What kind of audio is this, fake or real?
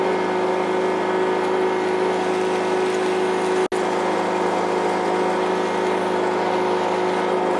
real